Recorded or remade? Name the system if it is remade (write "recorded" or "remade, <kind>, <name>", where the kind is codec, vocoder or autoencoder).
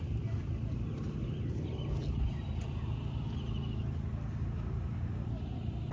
recorded